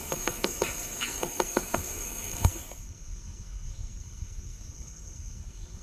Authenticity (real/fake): fake